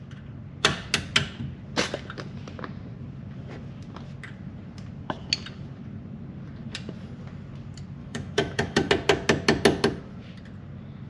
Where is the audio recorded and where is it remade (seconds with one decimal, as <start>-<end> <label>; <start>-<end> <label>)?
0.0-8.0 recorded; 8.0-8.9 remade; 8.9-11.1 recorded